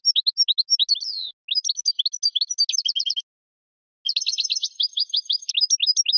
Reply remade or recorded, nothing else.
recorded